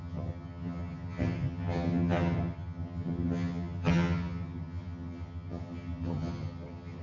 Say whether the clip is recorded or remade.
remade